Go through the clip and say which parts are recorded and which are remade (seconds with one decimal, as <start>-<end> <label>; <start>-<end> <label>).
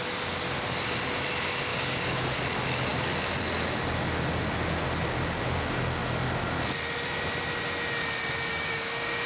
0.0-1.7 recorded; 1.7-2.4 remade; 2.4-8.5 recorded; 8.5-9.3 remade